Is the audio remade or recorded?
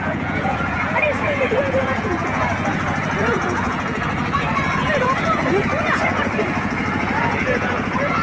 remade